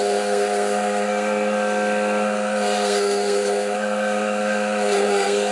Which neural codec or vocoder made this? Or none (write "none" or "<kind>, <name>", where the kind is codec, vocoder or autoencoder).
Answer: codec, SNAC